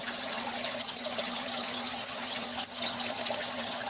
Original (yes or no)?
no